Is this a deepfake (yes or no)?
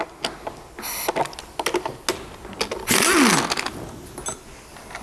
no